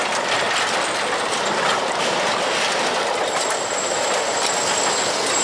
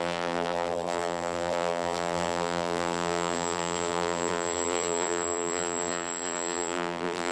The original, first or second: first